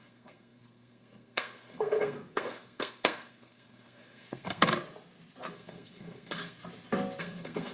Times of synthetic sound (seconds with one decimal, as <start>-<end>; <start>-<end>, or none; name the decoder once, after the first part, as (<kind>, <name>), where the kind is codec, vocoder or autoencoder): 0.0-4.7 (codec, SNAC); 5.4-6.6; 7.2-7.7

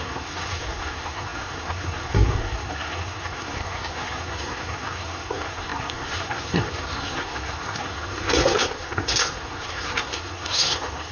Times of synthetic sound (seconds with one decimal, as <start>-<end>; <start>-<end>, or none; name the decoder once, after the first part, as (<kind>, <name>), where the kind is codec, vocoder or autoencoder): 0.0-11.1 (codec, SNAC)

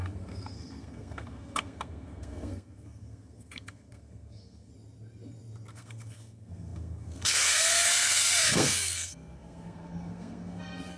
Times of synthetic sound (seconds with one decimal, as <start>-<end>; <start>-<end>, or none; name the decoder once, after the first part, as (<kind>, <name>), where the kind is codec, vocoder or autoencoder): 0.0-4.7 (codec, SNAC); 5.7-11.0

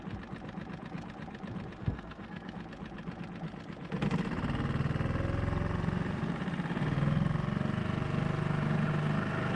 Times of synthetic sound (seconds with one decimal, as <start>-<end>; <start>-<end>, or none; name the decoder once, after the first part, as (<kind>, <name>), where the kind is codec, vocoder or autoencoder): 1.8-2.5 (codec, SNAC)

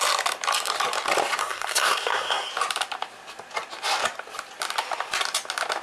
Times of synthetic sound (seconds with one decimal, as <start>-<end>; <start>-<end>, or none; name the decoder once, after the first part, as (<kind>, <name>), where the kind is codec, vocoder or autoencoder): 1.4-2.5 (codec, SNAC)

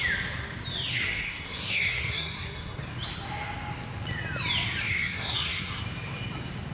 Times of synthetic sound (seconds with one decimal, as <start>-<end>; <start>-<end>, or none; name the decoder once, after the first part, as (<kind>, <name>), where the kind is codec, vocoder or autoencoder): 0.9-2.8 (codec, SNAC); 4.8-5.8